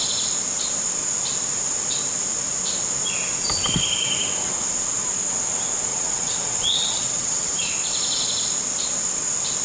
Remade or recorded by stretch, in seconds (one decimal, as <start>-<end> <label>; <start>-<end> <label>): 0.0-5.9 recorded; 5.9-7.7 remade; 7.7-9.6 recorded